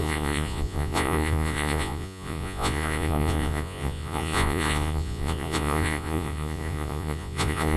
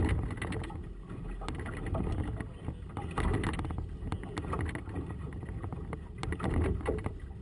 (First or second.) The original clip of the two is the second